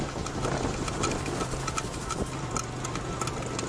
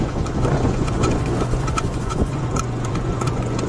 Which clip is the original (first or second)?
first